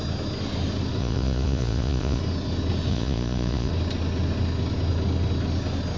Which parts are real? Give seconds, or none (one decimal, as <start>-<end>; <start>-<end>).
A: 0.0-1.0; 2.2-2.9; 3.7-6.0